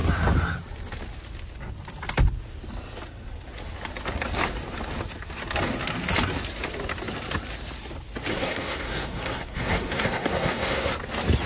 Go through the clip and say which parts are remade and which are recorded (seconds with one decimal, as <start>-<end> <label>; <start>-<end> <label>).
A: 0.0-8.3 recorded; 8.3-10.9 remade; 10.9-11.5 recorded